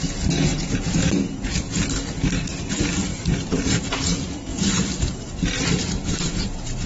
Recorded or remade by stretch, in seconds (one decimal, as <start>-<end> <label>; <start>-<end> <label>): 0.0-0.5 recorded; 0.5-1.1 remade; 1.1-3.1 recorded; 3.1-3.8 remade; 3.8-4.5 recorded; 4.5-6.9 remade